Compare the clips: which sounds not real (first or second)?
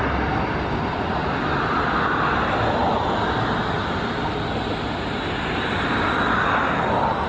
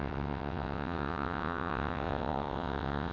second